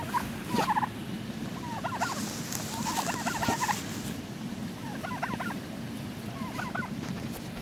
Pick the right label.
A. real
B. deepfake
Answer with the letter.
A